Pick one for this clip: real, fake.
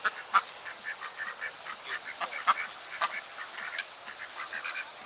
real